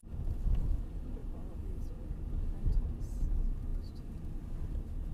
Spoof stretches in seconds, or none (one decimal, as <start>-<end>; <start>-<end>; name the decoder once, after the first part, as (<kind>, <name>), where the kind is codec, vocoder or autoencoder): 1.2-1.9 (vocoder, BigVGAN v2)